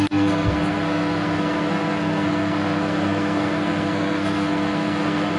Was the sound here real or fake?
fake